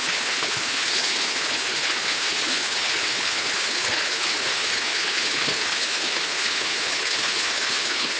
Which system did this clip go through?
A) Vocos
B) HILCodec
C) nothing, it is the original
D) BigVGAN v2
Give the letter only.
B